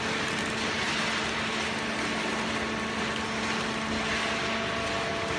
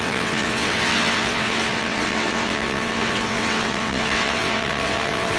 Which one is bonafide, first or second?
first